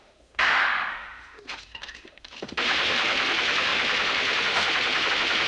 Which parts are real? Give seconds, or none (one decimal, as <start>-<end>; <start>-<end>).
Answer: none

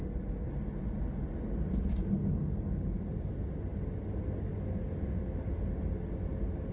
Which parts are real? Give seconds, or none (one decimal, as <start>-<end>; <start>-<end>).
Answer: 0.0-6.7

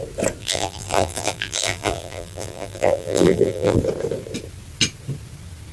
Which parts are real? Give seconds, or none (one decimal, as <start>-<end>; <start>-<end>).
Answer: 0.0-0.4; 3.8-5.7

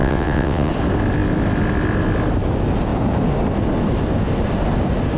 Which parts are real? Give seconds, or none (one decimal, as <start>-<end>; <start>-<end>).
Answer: 0.7-5.2

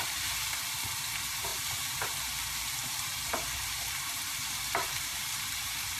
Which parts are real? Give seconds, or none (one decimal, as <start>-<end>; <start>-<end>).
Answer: none